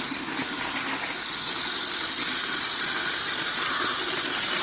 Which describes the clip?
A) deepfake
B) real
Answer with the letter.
B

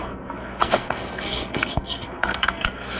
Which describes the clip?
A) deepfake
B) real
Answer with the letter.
A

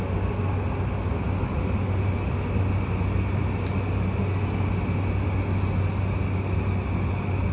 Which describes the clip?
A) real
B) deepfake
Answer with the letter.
A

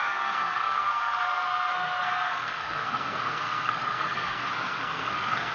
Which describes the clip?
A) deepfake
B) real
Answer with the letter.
A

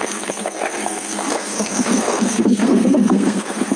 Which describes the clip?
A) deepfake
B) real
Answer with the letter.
A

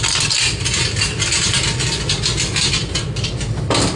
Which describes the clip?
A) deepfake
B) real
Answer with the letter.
B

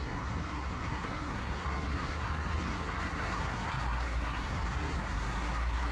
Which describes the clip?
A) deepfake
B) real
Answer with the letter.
A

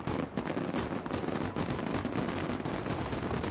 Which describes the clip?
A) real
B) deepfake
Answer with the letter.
A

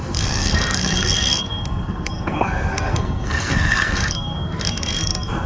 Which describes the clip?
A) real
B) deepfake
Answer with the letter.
B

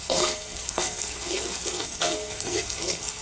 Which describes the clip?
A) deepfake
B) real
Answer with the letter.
A